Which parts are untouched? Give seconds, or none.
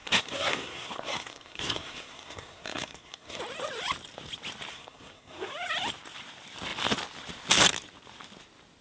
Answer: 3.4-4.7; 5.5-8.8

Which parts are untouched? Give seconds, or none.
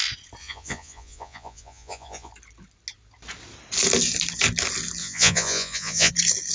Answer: 0.0-0.4; 2.3-5.0; 6.1-6.5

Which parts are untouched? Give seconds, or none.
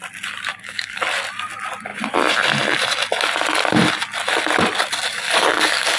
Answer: 0.0-0.5; 1.0-5.1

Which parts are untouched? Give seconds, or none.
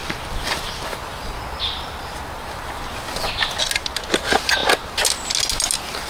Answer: 0.0-6.1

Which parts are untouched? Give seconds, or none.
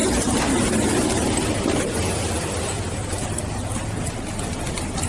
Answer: 0.0-5.1